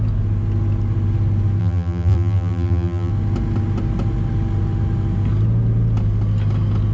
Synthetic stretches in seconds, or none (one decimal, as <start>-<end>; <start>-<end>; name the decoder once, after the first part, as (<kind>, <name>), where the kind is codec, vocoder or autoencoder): 1.6-3.1 (vocoder, BigVGAN v2)